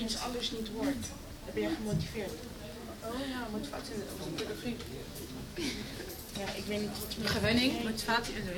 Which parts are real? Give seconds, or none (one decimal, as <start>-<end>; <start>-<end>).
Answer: 0.0-5.1; 6.1-8.6